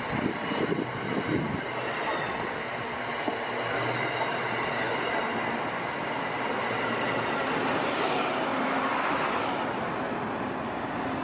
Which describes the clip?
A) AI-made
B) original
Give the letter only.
B